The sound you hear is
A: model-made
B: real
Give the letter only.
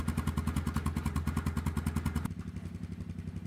B